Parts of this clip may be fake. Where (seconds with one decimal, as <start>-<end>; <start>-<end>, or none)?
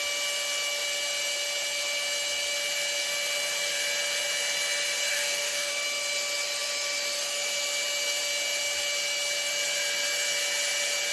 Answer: 5.1-5.7